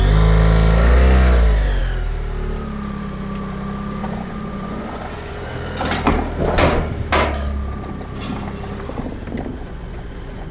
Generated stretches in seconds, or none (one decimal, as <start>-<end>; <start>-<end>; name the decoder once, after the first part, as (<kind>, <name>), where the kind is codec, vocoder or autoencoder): 4.0-5.5 (vocoder, Vocos); 9.5-10.5